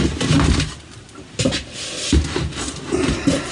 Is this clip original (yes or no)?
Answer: yes